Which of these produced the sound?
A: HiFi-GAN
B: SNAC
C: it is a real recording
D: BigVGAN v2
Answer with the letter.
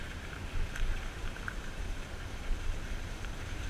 D